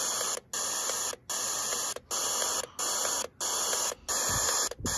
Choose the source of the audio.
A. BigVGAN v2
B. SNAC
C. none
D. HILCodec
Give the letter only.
C